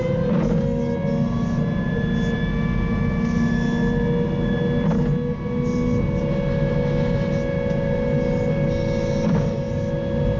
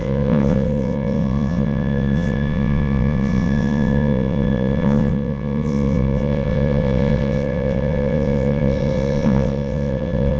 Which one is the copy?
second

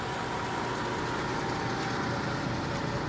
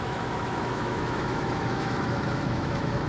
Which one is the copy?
second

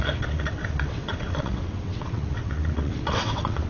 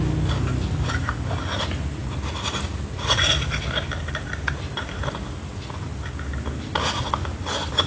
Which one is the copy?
first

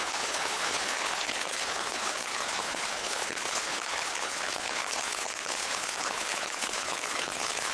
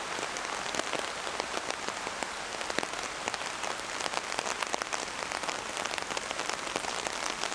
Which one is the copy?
first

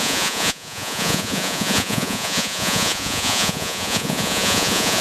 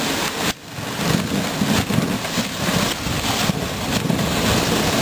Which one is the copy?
first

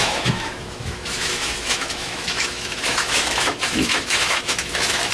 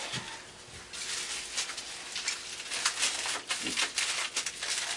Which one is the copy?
first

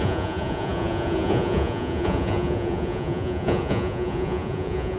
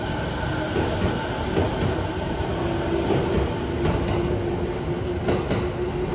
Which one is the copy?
first